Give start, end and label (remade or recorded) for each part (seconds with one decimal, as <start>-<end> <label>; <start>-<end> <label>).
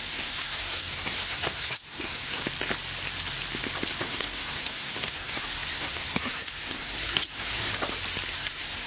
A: 0.0-2.4 remade; 2.4-4.0 recorded; 4.0-7.7 remade; 7.7-8.3 recorded; 8.3-8.9 remade